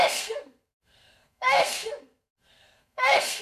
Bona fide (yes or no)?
no